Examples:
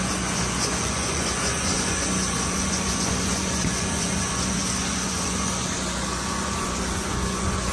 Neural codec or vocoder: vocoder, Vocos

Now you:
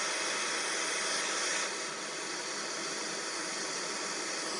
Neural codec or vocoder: none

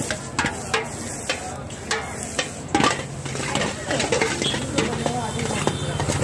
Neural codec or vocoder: none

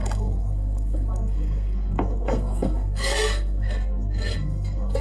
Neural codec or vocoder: codec, SNAC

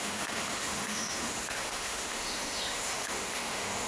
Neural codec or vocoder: autoencoder, DAC-VAE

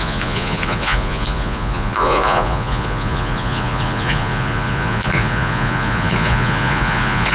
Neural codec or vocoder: vocoder, Vocos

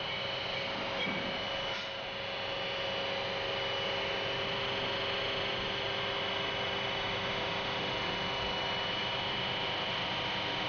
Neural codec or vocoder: none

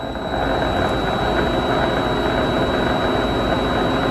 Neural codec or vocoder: none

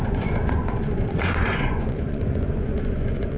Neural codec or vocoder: vocoder, Vocos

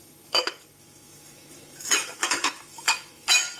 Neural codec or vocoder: autoencoder, DAC-VAE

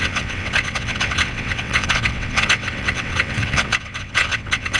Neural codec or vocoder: vocoder, WaveNeXt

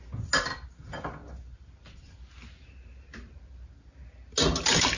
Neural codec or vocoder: none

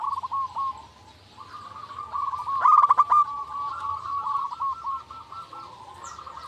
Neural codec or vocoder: none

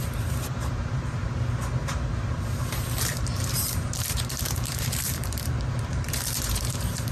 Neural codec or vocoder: vocoder, BigVGAN v2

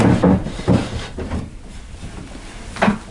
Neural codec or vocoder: none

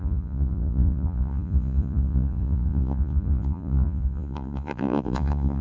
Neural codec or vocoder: vocoder, Vocos